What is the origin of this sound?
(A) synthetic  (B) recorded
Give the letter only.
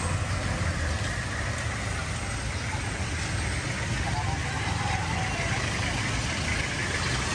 B